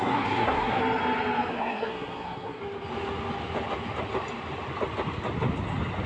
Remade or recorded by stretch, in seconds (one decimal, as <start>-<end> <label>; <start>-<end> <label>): 0.0-0.8 remade; 0.8-1.5 recorded; 1.5-2.6 remade; 2.6-6.1 recorded